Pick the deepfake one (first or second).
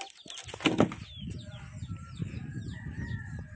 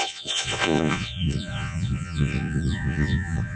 second